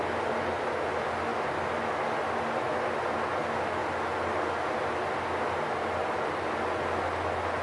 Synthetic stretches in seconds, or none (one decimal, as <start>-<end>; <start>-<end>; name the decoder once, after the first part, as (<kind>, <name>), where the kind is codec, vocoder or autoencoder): none